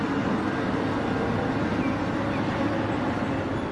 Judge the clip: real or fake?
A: real